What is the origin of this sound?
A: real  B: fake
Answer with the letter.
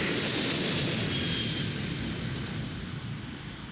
A